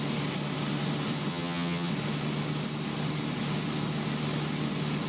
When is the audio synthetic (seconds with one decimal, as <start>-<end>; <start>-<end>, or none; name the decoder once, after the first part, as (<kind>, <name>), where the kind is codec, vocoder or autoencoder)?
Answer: 1.3-1.9 (vocoder, HiFi-GAN)

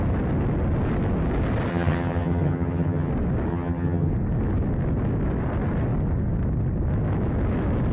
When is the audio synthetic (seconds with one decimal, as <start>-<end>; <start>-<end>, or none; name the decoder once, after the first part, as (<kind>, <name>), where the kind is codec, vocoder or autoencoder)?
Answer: 1.7-3.1 (vocoder, HiFi-GAN); 3.5-4.1

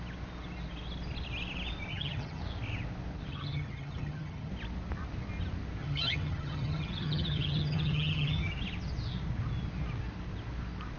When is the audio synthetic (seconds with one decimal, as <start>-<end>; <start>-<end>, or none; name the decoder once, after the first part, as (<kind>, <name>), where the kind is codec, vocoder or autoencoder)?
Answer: 1.9-2.4 (vocoder, HiFi-GAN); 3.3-4.5; 5.8-8.5

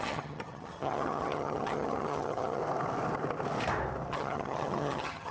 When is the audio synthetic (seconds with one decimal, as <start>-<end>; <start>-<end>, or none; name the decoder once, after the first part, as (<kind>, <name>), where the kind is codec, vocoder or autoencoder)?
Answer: 0.0-2.6 (vocoder, HiFi-GAN); 4.1-5.3